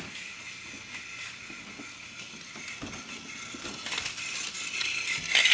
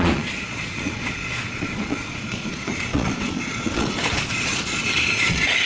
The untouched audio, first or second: first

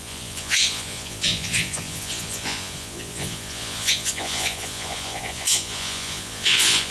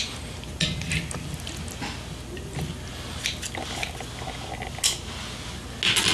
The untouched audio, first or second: second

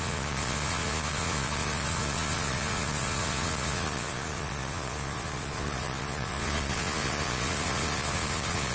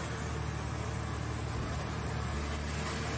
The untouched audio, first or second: second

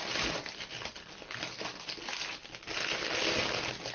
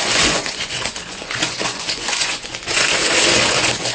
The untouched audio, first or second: first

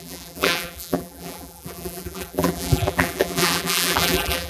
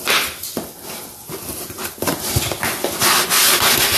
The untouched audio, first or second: second